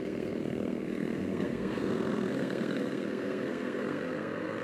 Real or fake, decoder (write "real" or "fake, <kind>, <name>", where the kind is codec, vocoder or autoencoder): fake, codec, SNAC